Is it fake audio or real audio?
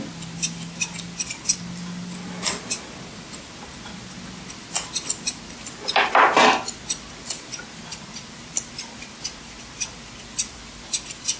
real